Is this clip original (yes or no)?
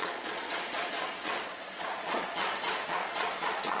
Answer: no